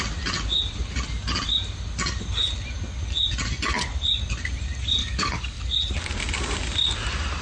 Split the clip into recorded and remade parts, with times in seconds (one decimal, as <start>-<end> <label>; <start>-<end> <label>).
0.0-5.0 recorded; 5.0-5.6 remade; 5.6-7.4 recorded